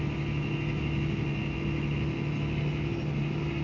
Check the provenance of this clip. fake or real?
real